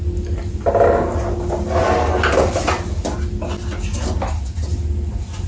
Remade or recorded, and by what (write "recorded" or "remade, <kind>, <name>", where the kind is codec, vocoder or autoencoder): recorded